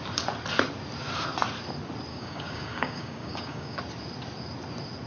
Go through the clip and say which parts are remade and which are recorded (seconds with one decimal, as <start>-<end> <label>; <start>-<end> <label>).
0.0-2.1 recorded; 2.1-3.8 remade; 3.8-5.1 recorded